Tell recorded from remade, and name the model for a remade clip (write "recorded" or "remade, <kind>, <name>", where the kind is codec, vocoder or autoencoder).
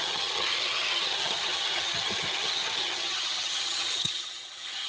remade, vocoder, HiFi-GAN